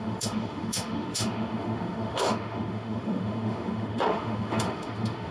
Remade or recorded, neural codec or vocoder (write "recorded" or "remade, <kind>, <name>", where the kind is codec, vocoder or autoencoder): remade, autoencoder, DAC-VAE